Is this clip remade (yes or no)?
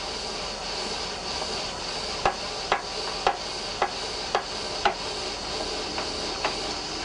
no